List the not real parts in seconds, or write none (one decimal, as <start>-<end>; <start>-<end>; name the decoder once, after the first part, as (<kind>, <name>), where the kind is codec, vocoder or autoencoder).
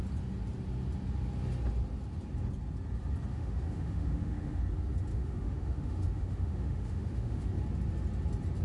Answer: 3.3-4.6 (autoencoder, DAC-VAE); 5.1-7.5